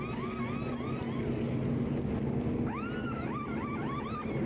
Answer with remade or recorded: recorded